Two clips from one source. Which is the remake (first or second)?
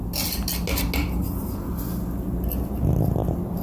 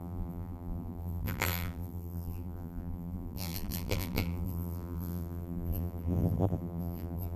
second